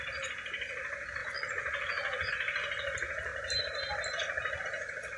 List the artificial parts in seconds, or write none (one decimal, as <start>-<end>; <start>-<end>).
1.2-2.3